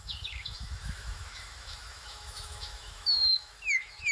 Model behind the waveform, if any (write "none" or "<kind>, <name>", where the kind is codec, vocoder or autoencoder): autoencoder, DAC-VAE